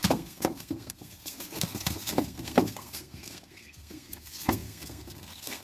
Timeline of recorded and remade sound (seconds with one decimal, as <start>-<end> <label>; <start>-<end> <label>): 0.0-5.6 remade